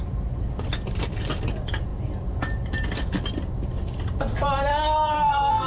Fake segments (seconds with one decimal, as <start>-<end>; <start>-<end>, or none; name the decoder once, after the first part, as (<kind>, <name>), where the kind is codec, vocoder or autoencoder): 4.7-5.7 (codec, SNAC)